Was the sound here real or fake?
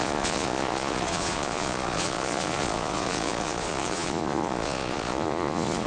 fake